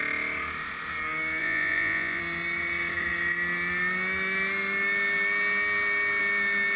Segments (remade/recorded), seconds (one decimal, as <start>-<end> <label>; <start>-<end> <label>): 0.0-1.4 recorded; 1.4-2.2 remade; 2.2-6.8 recorded